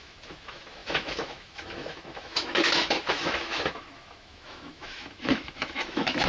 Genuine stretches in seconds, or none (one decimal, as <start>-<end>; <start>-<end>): none